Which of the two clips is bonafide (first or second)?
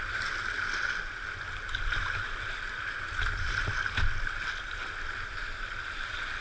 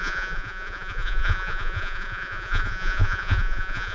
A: first